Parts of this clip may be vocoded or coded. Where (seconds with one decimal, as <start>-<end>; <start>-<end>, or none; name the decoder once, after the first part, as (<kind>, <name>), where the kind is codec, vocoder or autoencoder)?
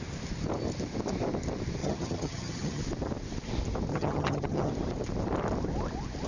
1.8-2.8 (vocoder, HiFi-GAN); 3.9-4.7